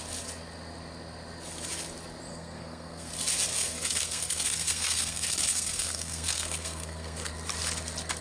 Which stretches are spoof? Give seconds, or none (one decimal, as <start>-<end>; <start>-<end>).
2.3-3.1; 3.5-7.3